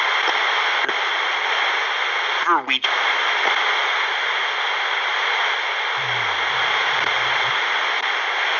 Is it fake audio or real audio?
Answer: real